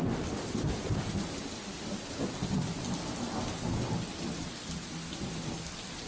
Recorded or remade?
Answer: recorded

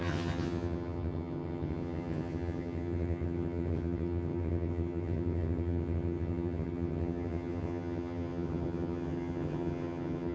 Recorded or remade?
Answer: remade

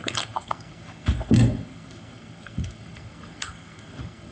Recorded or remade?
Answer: remade